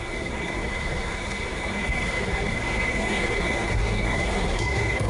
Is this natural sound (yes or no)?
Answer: no